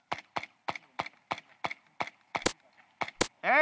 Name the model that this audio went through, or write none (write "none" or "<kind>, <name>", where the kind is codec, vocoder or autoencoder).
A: none